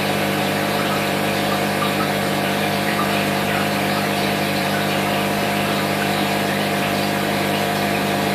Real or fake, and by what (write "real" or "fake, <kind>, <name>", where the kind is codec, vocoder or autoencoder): fake, vocoder, BigVGAN v2